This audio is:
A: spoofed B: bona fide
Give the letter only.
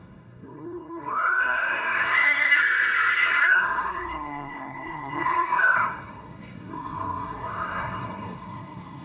A